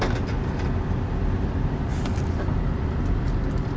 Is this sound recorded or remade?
recorded